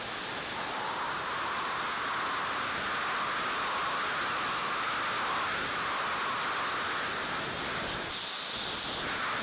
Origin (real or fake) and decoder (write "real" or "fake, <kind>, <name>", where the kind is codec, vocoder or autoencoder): real